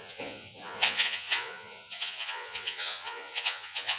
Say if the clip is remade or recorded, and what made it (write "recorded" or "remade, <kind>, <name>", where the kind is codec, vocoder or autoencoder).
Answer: remade, vocoder, Vocos